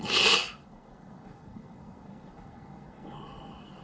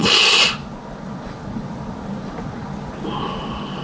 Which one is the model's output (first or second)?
first